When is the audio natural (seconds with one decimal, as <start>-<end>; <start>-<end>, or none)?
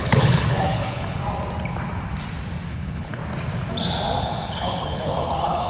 1.2-2.7; 3.2-4.2